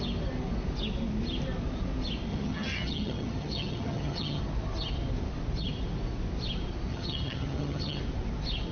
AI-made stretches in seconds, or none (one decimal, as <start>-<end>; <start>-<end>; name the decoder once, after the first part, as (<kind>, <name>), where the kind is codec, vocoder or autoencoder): 2.3-4.4 (vocoder, HiFi-GAN); 6.9-8.0